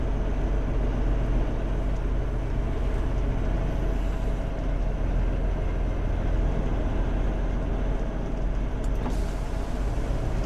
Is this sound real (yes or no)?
yes